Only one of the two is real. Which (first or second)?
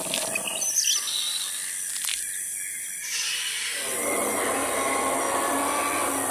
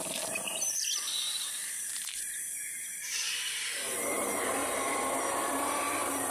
first